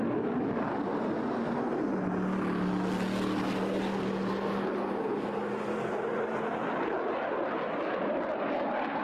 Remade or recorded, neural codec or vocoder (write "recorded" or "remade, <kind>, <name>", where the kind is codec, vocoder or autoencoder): recorded